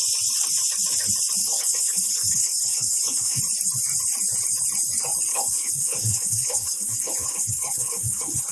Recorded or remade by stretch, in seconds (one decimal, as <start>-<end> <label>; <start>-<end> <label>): 0.0-1.4 recorded; 1.4-3.4 remade; 3.4-5.3 recorded; 5.3-8.5 remade